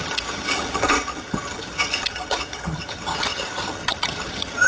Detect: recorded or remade remade